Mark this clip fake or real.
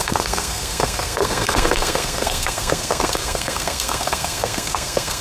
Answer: fake